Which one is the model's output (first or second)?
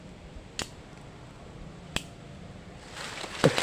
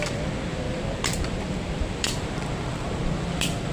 second